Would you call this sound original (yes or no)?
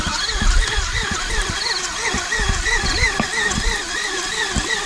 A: yes